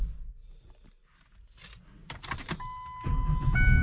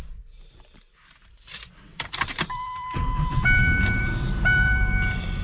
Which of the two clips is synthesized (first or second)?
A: second